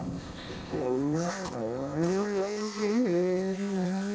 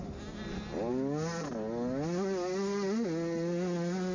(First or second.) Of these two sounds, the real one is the second